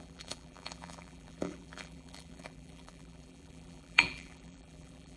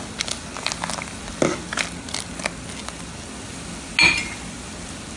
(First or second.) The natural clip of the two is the second